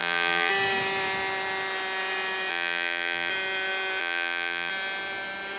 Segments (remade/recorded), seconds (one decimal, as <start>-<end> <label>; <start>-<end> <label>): 0.0-0.5 remade; 0.5-2.5 recorded; 2.5-3.3 remade; 3.3-4.0 recorded; 4.0-4.7 remade; 4.7-5.6 recorded